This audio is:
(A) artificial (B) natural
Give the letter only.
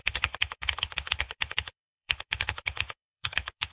A